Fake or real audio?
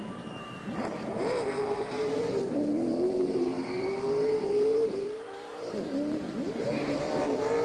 fake